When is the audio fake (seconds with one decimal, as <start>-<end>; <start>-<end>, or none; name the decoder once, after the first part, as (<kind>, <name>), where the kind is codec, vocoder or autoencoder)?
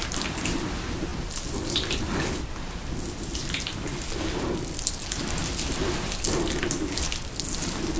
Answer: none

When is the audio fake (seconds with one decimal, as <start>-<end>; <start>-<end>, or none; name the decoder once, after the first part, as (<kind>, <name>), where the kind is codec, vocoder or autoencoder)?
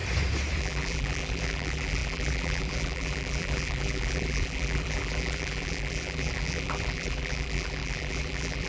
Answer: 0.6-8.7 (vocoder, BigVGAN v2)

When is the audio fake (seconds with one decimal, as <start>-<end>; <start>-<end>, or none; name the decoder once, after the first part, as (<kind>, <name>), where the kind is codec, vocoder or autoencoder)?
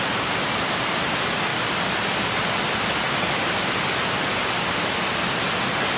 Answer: 0.0-1.5 (vocoder, BigVGAN v2); 5.1-6.0